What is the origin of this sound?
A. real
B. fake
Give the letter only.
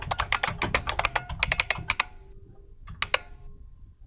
A